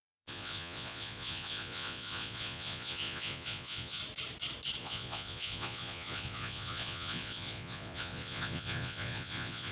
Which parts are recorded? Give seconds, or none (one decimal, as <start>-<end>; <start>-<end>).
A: 4.0-4.8